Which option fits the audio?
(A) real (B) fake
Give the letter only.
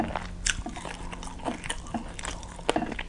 A